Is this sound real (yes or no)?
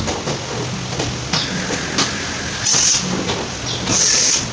yes